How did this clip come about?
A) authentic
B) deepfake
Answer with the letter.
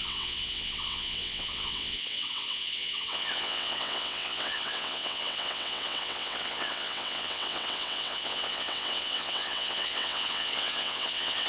B